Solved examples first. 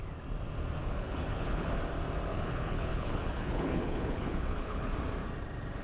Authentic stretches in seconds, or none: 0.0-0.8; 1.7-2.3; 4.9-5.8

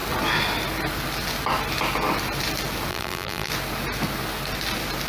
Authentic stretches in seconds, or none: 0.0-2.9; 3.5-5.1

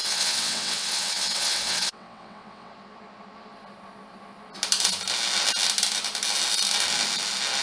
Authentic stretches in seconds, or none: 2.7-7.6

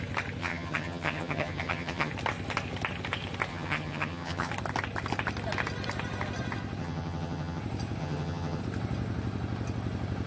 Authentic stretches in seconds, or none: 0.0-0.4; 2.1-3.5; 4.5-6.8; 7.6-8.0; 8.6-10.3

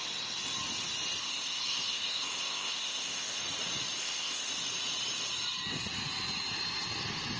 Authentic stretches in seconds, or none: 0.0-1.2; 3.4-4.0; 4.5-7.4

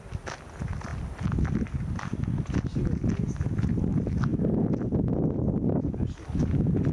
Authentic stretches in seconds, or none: 0.0-6.9